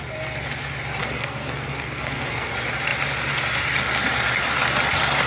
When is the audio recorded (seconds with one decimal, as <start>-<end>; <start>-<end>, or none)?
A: 0.0-1.0; 2.5-5.3